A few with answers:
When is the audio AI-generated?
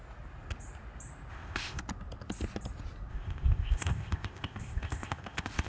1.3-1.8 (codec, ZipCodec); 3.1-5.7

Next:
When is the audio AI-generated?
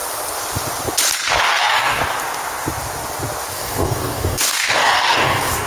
1.4-2.0 (codec, DAC); 3.5-5.7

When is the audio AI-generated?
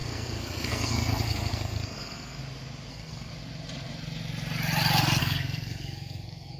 0.0-2.4 (codec, SNAC); 2.9-3.3; 5.2-6.6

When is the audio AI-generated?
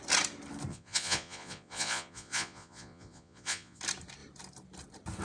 0.7-3.8 (vocoder, Vocos)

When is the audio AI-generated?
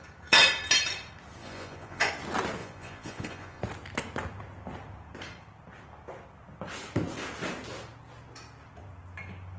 1.4-2.1 (vocoder, Vocos); 2.6-3.6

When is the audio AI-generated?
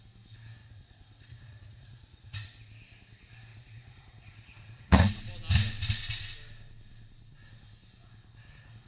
0.6-2.6 (vocoder, Vocos); 3.5-5.2